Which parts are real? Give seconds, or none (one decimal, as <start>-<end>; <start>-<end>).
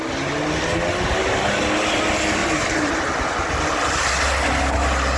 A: 0.0-5.2